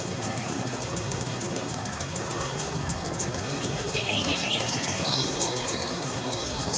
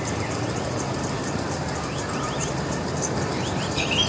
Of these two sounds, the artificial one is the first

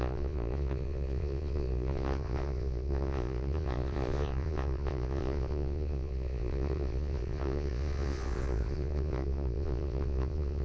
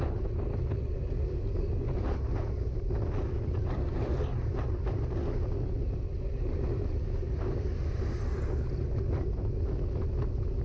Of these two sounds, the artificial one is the first